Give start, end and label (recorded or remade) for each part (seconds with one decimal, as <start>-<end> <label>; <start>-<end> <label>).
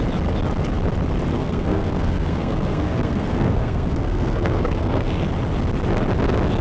0.0-1.3 recorded; 1.3-5.3 remade; 5.3-6.6 recorded